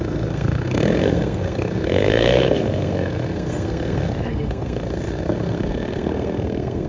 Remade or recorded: remade